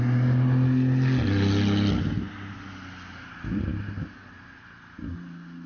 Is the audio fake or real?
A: real